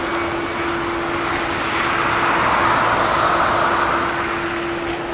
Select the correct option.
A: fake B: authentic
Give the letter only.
B